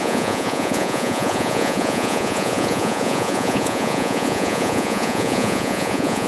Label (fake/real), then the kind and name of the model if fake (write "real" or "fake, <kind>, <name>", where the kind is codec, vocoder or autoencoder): fake, vocoder, Vocos